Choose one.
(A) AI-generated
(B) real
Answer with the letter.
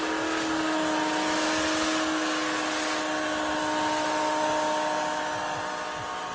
B